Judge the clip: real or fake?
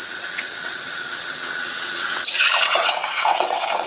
fake